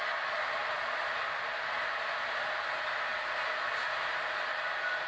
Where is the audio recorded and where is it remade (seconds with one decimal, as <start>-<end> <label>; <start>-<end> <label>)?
0.0-5.1 recorded